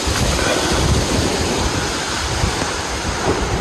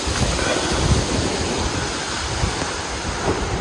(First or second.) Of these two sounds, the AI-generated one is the first